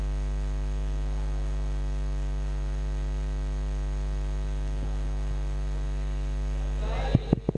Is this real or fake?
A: real